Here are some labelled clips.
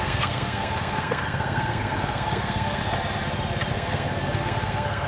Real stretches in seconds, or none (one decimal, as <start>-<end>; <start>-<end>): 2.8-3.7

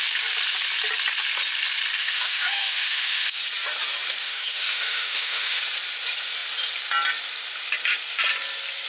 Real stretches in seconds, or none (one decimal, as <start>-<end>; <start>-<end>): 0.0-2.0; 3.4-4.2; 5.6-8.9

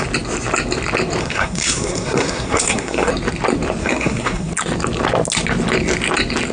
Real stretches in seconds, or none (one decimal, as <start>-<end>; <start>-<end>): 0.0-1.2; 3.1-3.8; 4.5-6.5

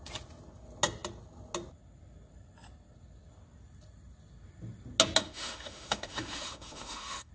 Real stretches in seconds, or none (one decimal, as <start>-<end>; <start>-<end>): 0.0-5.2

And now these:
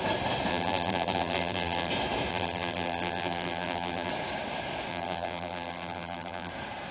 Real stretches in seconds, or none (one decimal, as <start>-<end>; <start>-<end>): 0.0-0.5; 1.9-2.3; 4.1-4.9; 6.5-6.9